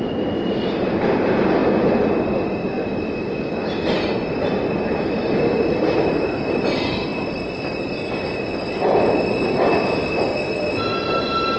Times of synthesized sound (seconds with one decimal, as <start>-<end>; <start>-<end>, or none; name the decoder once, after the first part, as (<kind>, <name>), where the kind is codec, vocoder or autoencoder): none